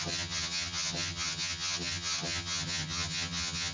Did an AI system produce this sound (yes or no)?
yes